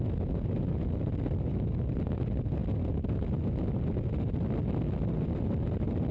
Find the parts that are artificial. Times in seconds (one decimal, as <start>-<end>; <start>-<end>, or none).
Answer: none